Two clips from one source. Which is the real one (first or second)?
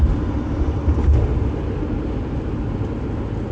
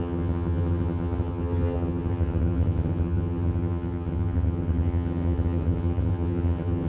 first